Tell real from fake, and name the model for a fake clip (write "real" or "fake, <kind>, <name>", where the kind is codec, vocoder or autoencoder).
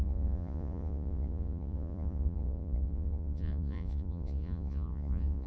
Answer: fake, vocoder, Vocos